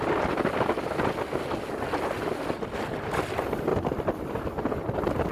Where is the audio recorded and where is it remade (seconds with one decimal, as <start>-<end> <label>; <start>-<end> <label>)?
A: 0.0-3.7 recorded; 3.7-4.4 remade; 4.4-5.3 recorded